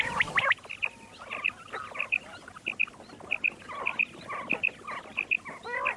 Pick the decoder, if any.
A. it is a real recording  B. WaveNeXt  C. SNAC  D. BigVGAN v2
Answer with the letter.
A